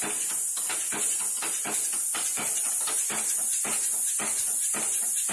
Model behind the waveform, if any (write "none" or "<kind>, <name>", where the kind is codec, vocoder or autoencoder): none